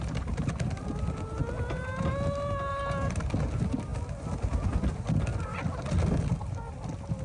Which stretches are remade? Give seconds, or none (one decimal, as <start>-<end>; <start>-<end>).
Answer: none